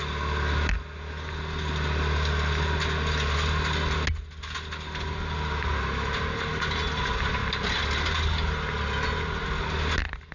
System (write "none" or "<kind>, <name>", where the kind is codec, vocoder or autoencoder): none